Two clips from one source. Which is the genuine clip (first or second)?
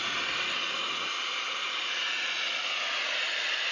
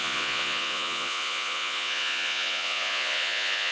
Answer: first